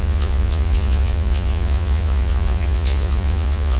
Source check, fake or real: fake